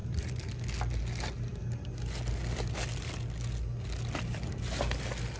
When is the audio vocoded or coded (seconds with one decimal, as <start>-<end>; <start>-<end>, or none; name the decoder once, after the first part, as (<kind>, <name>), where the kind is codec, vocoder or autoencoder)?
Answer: 0.0-0.5 (vocoder, BigVGAN v2)